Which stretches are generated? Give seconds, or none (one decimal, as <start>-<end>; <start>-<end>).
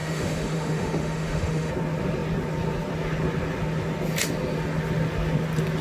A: 0.0-1.7